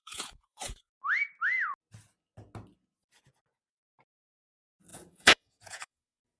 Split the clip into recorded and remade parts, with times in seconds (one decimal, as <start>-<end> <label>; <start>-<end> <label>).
0.0-0.9 remade; 0.9-4.9 recorded; 4.9-6.4 remade